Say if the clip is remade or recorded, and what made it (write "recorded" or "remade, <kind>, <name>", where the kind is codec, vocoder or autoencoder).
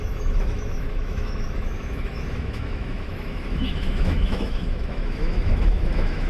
remade, autoencoder, DAC-VAE